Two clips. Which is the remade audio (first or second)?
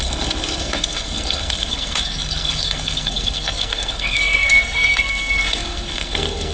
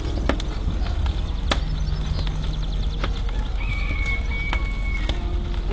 first